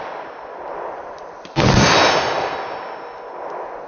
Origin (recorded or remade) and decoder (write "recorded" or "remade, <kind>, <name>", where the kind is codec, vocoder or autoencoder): recorded